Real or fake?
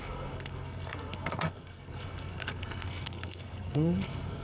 fake